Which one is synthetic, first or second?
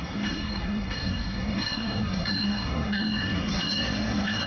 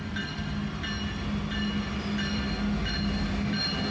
first